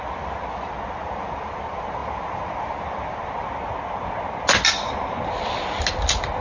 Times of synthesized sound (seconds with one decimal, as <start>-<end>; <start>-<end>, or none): none